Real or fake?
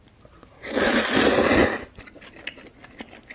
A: real